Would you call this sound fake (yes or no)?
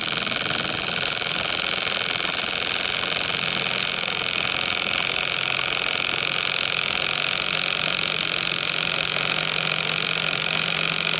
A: no